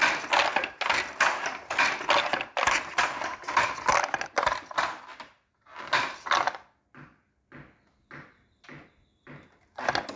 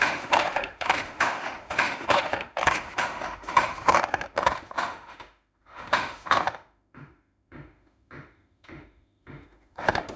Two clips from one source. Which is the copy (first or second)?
second